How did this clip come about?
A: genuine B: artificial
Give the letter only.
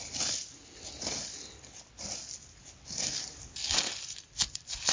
A